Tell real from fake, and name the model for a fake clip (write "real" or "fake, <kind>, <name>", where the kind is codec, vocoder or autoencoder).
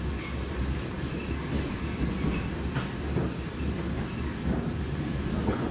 real